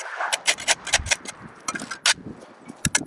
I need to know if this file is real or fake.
real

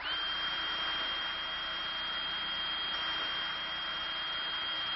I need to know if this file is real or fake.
real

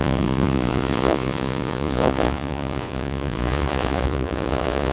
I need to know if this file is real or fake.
fake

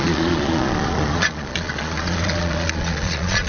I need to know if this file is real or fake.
fake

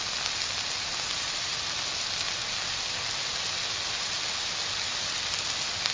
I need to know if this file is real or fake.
real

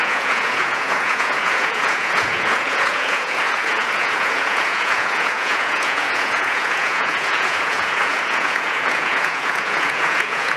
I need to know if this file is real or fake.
fake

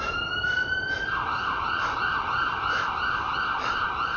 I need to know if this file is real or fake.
real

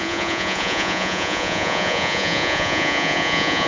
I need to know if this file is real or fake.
fake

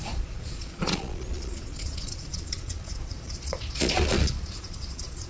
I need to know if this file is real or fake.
fake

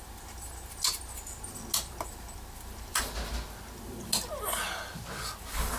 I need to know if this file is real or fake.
real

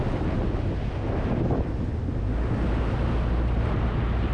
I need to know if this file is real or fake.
real